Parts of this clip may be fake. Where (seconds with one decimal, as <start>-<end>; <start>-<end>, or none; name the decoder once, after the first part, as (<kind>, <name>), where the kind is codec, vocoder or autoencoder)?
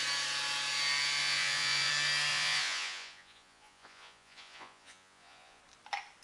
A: 1.2-1.9 (vocoder, Vocos); 2.3-5.6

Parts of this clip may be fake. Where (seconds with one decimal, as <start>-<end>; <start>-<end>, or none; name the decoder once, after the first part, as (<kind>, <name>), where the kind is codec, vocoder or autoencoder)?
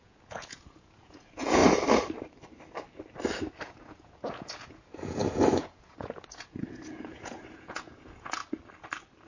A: 0.0-1.6 (vocoder, Vocos); 3.6-8.4